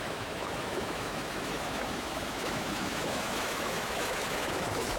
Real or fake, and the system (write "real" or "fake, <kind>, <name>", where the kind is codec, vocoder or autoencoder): fake, autoencoder, DAC-VAE